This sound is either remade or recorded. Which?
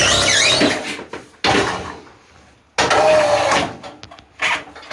recorded